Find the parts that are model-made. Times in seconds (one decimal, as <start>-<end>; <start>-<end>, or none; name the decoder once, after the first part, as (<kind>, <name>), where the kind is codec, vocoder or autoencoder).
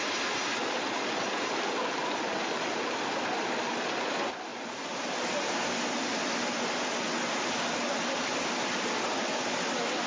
none